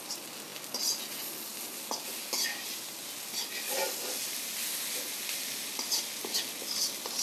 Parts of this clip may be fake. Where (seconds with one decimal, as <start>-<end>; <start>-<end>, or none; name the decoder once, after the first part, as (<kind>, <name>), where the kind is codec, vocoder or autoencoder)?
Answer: none